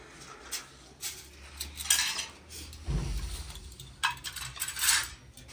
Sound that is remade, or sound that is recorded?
recorded